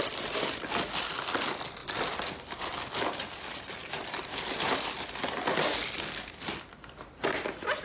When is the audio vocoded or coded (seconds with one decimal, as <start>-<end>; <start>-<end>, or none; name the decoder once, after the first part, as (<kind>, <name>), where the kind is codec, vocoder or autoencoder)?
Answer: 1.8-2.4 (vocoder, BigVGAN v2); 3.8-4.3